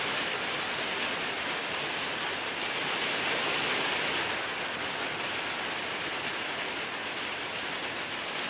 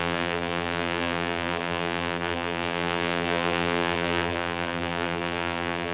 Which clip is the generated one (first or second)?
second